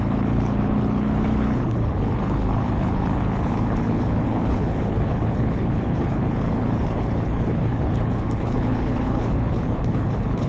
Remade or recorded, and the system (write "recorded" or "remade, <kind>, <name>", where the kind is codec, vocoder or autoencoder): remade, codec, HILCodec